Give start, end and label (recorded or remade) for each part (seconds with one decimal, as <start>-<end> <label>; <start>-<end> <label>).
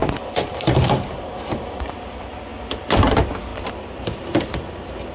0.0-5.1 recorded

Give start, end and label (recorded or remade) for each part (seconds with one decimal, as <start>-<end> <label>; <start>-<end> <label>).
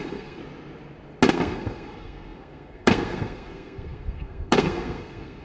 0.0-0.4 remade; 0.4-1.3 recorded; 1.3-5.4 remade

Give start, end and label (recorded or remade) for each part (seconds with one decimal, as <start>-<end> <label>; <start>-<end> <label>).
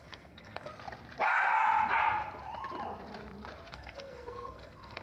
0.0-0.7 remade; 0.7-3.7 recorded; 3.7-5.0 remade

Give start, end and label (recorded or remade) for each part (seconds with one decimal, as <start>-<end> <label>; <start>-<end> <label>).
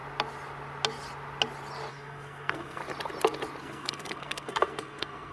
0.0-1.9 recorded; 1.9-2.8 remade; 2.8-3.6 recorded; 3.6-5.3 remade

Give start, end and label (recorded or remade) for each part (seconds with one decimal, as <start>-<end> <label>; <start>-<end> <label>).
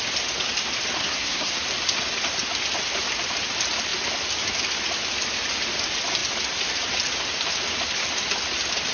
0.0-1.0 recorded; 1.0-1.5 remade; 1.5-8.9 recorded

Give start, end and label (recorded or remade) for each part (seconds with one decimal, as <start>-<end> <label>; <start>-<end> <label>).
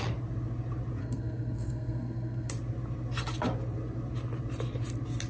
0.0-1.0 recorded; 1.0-2.5 remade; 2.5-5.3 recorded